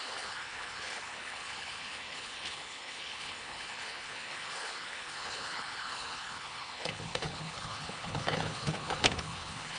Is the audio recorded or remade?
remade